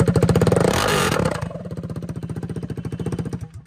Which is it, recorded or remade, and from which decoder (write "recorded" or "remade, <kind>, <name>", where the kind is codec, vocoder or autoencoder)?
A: recorded